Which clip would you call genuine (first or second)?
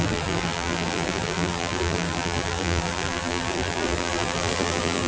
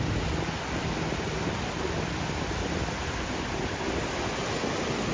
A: second